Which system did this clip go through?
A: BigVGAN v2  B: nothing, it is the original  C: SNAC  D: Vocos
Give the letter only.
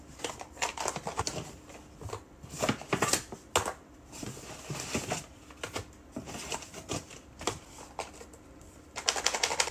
B